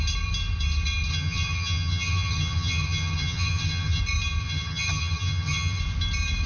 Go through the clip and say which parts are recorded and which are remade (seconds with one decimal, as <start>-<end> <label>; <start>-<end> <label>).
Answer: 0.0-1.1 recorded; 1.1-4.0 remade; 4.0-4.4 recorded; 4.4-5.8 remade; 5.8-6.5 recorded